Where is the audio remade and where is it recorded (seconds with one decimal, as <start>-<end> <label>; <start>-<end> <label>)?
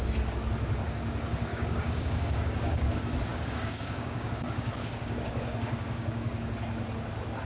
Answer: 0.0-1.5 recorded; 1.5-2.9 remade; 2.9-3.3 recorded; 3.3-6.3 remade; 6.3-7.4 recorded